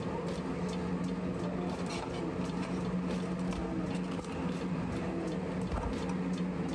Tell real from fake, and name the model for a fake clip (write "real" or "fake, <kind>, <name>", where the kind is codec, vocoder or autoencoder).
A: real